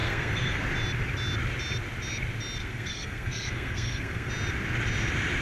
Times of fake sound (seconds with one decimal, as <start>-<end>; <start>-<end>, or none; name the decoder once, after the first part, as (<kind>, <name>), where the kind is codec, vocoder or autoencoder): 0.0-0.6 (codec, SNAC); 2.6-4.3